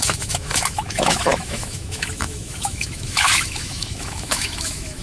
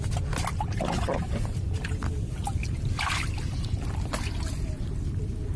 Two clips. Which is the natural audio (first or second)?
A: second